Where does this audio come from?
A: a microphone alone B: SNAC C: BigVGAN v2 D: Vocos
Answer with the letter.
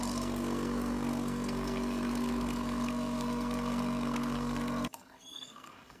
B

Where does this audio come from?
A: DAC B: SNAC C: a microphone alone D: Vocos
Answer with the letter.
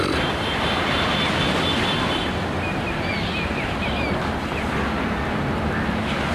C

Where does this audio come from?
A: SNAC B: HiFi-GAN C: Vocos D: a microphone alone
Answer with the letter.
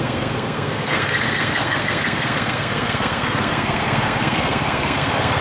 A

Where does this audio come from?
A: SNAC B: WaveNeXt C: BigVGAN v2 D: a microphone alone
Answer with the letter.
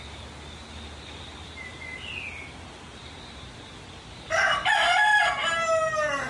D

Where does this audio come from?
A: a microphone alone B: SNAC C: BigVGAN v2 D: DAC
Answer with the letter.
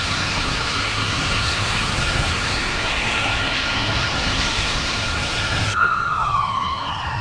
B